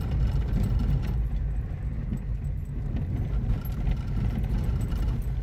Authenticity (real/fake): real